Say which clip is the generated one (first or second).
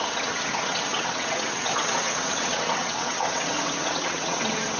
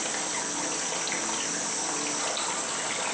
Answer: first